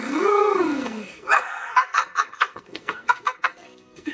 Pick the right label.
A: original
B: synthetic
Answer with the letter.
B